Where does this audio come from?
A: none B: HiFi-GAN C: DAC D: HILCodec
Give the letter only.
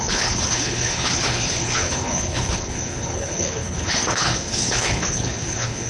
D